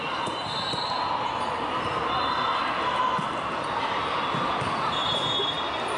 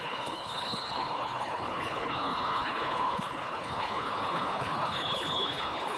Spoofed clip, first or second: second